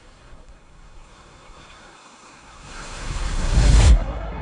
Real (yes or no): no